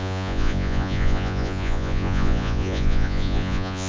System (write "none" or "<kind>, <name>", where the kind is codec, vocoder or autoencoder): vocoder, Vocos